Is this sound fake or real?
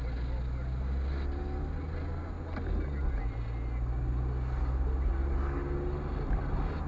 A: real